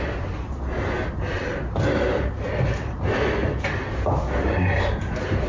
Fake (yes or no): no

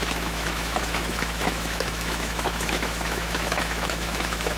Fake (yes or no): yes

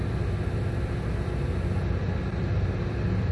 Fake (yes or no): no